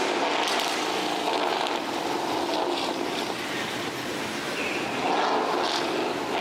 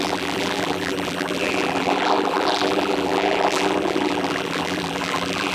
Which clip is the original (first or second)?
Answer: first